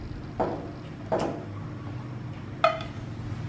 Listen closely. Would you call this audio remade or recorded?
recorded